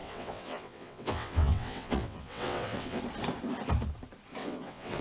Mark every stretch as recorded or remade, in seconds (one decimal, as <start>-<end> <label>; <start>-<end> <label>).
0.0-3.0 remade; 3.0-4.4 recorded; 4.4-5.0 remade